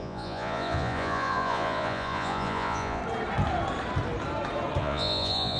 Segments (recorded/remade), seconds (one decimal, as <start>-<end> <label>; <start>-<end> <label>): 0.0-3.0 remade; 3.0-4.8 recorded; 4.8-5.6 remade